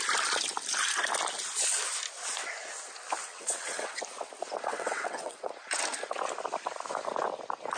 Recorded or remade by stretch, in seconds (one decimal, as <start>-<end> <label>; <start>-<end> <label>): 0.0-3.2 recorded; 3.2-4.0 remade; 4.0-4.7 recorded; 4.7-5.5 remade; 5.5-7.8 recorded